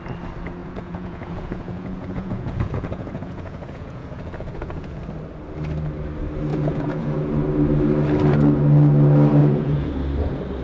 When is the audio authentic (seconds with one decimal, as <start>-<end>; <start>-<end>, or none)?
0.0-0.6; 5.0-6.5; 7.3-9.4; 9.9-10.6